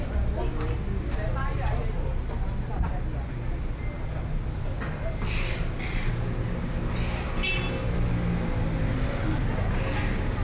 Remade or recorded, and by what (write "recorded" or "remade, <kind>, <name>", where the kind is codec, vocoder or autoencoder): recorded